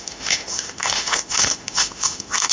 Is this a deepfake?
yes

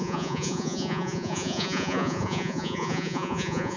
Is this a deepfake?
yes